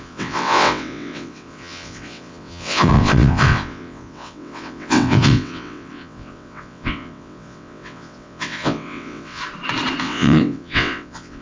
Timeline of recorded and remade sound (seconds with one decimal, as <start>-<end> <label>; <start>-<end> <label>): 0.0-9.4 remade; 9.4-10.0 recorded; 10.0-11.4 remade

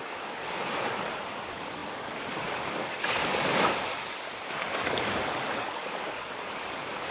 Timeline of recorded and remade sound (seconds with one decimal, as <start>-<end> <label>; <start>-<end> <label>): 0.0-0.6 remade; 0.6-1.3 recorded; 1.3-7.1 remade

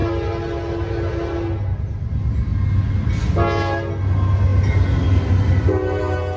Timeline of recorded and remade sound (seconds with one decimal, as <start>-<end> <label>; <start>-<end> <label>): 0.0-6.4 recorded

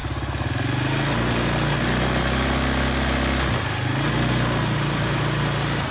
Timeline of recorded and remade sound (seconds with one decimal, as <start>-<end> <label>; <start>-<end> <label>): 0.0-5.9 recorded

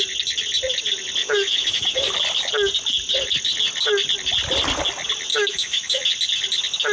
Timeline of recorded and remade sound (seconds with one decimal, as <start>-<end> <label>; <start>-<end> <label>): 0.0-1.2 recorded; 1.2-2.1 remade; 2.1-5.3 recorded; 5.3-6.0 remade; 6.0-6.9 recorded

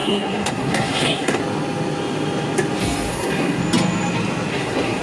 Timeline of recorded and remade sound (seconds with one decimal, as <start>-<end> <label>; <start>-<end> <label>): 0.0-1.4 remade; 1.4-3.1 recorded; 3.1-3.6 remade; 3.6-4.5 recorded; 4.5-5.0 remade

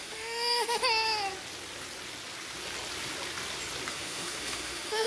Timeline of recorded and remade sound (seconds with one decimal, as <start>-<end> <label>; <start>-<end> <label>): 0.0-0.8 remade; 0.8-3.9 recorded; 3.9-5.1 remade

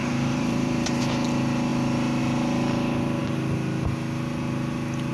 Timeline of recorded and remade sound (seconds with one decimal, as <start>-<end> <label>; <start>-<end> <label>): 0.0-1.0 remade; 1.0-5.1 recorded